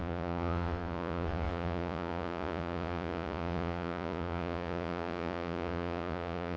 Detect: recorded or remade remade